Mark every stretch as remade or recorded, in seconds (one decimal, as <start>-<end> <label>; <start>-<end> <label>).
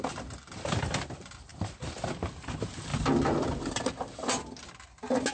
0.0-5.3 recorded